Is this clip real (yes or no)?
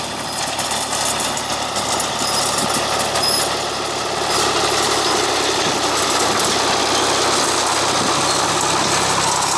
yes